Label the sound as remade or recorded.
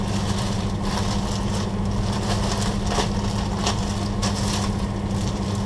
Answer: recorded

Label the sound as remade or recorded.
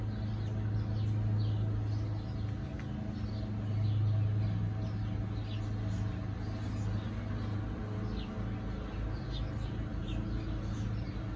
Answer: recorded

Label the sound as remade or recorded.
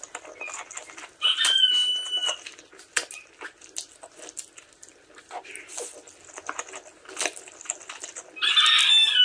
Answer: recorded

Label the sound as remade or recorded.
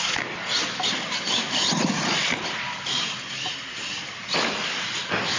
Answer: recorded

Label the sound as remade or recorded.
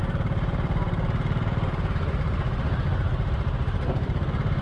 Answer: remade